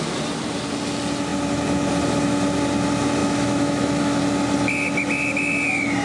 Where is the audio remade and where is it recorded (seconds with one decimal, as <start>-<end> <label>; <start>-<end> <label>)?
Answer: 0.0-3.2 recorded; 3.2-4.2 remade; 4.2-6.0 recorded